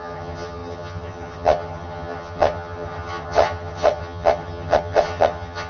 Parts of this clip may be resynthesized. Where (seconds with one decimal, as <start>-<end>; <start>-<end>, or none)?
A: 0.0-5.7